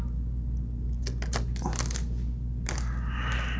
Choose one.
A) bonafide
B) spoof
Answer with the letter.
A